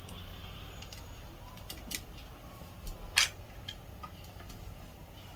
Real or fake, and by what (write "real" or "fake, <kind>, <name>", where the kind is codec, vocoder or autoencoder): real